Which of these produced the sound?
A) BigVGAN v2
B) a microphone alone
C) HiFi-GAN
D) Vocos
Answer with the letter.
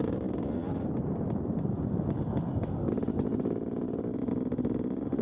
B